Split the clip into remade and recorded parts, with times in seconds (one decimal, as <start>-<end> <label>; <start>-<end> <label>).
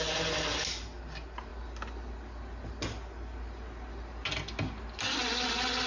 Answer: 0.0-5.9 recorded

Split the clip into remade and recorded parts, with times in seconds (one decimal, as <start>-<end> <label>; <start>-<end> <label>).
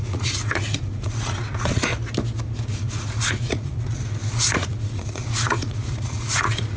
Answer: 0.0-1.9 remade; 1.9-2.6 recorded; 2.6-6.8 remade